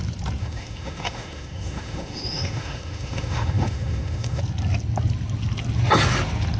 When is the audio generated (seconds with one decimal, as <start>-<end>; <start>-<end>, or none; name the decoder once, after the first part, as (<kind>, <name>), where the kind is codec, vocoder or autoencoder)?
0.4-4.4 (autoencoder, DAC-VAE)